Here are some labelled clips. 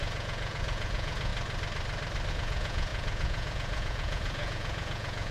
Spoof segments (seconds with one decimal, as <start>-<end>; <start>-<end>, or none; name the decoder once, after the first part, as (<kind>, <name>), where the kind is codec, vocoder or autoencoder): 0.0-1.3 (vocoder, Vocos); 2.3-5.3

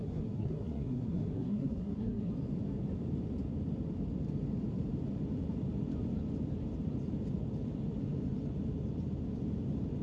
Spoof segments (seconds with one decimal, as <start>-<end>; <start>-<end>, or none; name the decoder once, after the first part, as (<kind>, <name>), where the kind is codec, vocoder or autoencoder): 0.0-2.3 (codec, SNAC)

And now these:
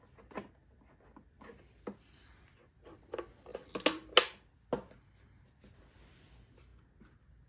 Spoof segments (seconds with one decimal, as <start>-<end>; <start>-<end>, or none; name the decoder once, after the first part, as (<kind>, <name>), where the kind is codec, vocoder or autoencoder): none

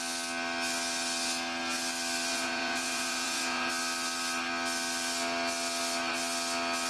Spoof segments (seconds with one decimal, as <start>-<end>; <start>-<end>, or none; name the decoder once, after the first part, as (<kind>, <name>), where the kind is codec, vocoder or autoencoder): 2.3-3.7 (vocoder, Vocos)

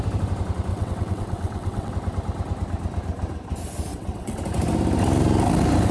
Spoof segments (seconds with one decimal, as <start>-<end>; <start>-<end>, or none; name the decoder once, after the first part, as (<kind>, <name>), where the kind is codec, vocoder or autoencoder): 0.7-1.9 (vocoder, WaveNeXt); 3.9-4.4

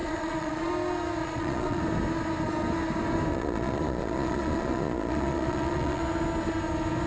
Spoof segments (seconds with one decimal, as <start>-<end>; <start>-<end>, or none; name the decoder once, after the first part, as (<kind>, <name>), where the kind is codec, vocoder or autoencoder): 0.0-0.7 (vocoder, Vocos); 1.2-1.8; 3.3-6.0

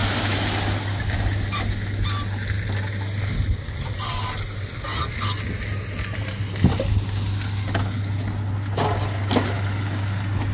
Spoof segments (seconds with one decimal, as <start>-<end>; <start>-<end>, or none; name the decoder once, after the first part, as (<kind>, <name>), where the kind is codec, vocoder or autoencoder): none